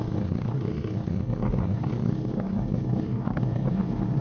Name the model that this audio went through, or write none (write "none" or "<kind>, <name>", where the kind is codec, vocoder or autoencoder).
codec, SNAC